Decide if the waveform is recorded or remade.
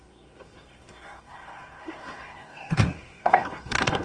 remade